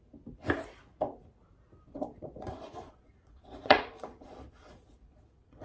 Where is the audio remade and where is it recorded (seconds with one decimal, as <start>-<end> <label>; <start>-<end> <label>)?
0.0-1.9 recorded; 1.9-5.6 remade